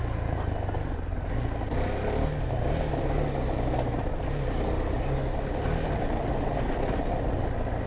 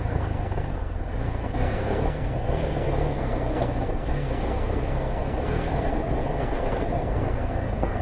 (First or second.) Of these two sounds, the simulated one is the second